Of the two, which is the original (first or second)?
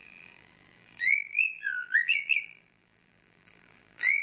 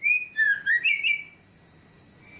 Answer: second